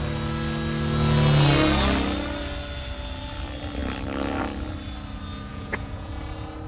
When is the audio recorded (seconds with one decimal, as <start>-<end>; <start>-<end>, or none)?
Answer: 0.0-5.5; 6.1-6.7